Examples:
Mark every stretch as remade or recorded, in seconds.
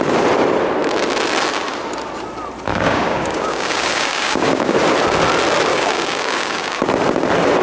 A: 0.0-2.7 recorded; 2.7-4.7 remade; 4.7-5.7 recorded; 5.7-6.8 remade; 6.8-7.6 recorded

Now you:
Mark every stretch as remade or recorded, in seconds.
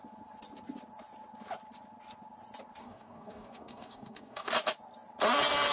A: 0.0-2.8 recorded; 2.8-4.5 remade; 4.5-5.7 recorded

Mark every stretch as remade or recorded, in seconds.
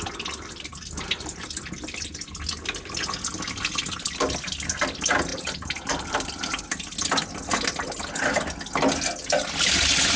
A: 0.0-0.7 recorded; 0.7-2.1 remade; 2.1-5.3 recorded; 5.3-6.6 remade; 6.6-10.2 recorded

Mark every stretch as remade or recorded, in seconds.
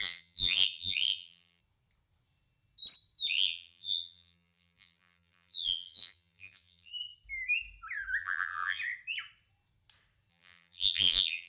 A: 0.0-1.6 remade; 1.6-3.3 recorded; 3.3-6.9 remade; 6.9-8.2 recorded; 8.2-8.8 remade; 8.8-10.3 recorded; 10.3-11.5 remade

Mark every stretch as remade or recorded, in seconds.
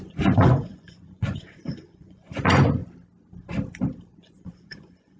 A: 0.0-2.8 remade; 2.8-4.1 recorded; 4.1-5.2 remade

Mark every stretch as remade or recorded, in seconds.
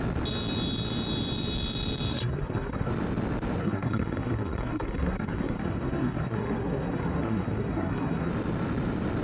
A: 0.0-2.1 recorded; 2.1-2.9 remade; 2.9-3.6 recorded; 3.6-8.3 remade; 8.3-9.2 recorded